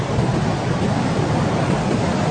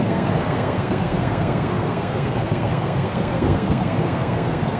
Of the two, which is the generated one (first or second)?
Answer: second